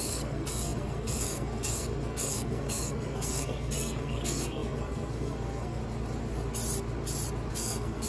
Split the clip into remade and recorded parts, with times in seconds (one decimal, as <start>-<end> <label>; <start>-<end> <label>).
0.0-5.8 remade; 5.8-7.5 recorded; 7.5-8.1 remade